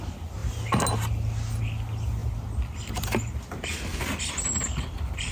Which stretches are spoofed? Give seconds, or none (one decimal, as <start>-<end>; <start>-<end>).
none